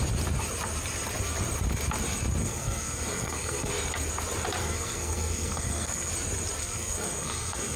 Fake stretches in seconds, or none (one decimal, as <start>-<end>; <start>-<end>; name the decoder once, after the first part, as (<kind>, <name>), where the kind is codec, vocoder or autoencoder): 2.4-3.7 (codec, SNAC); 4.6-6.1; 6.6-7.8